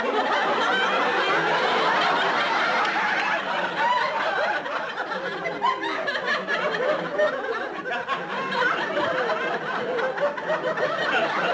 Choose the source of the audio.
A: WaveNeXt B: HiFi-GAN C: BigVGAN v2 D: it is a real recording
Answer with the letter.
D